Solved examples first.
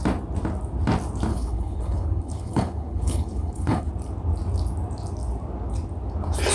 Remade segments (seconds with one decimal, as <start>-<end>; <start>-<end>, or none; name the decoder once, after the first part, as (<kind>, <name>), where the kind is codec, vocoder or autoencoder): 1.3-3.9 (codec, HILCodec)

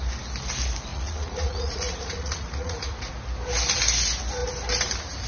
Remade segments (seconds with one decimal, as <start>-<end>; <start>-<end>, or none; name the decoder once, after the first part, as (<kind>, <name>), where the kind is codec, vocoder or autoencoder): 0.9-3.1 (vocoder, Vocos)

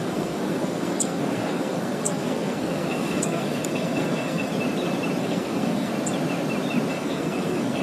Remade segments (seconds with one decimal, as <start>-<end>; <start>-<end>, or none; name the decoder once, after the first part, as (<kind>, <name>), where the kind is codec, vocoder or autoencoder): 0.0-4.5 (codec, SNAC); 5.2-5.9; 6.9-7.8

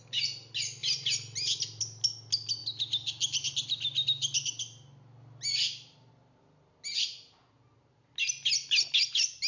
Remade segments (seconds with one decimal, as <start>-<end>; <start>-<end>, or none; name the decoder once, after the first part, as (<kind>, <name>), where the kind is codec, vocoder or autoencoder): none

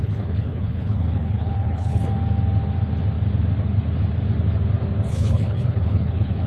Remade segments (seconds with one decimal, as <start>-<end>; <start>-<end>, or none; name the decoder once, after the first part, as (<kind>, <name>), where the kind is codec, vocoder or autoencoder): 0.0-2.0 (codec, HILCodec); 5.1-6.5

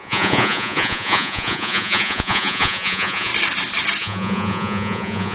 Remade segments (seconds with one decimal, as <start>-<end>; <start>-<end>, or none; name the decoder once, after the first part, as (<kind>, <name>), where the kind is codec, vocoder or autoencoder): 0.0-3.3 (vocoder, Vocos); 4.0-5.3

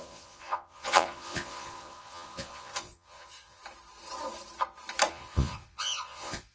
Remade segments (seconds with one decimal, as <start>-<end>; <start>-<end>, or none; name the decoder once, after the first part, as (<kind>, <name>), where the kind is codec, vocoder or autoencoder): 0.0-3.6 (vocoder, Vocos); 5.1-6.5

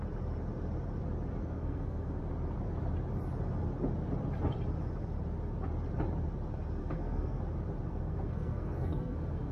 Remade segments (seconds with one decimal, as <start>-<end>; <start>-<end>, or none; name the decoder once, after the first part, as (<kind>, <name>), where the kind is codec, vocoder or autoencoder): 1.4-2.2 (codec, SNAC); 6.8-7.4; 7.9-9.5